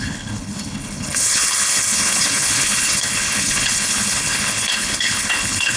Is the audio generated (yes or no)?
yes